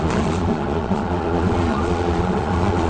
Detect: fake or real fake